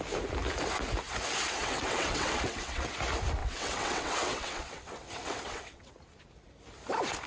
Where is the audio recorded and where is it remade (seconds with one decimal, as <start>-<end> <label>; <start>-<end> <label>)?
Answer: 0.0-1.6 recorded; 1.6-3.0 remade; 3.0-3.4 recorded; 3.4-5.9 remade; 5.9-7.3 recorded